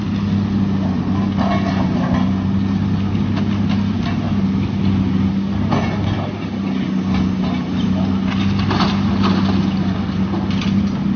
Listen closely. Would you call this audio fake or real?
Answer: real